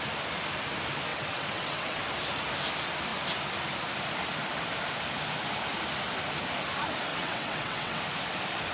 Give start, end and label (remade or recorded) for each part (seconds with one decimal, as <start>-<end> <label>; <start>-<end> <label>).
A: 0.0-1.1 recorded; 1.1-2.0 remade; 2.0-7.1 recorded; 7.1-8.0 remade; 8.0-8.7 recorded